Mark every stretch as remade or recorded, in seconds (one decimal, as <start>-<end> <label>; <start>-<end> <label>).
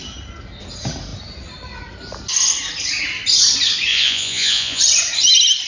0.0-3.9 recorded; 3.9-4.8 remade; 4.8-5.7 recorded